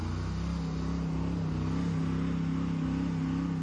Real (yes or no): yes